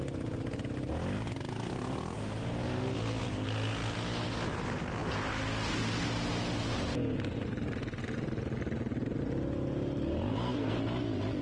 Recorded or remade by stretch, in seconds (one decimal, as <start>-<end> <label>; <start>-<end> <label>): 0.0-10.3 recorded; 10.3-10.8 remade; 10.8-11.4 recorded